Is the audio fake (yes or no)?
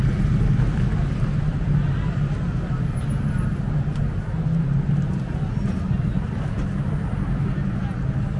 no